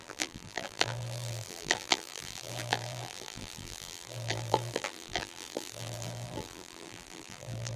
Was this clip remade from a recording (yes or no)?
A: yes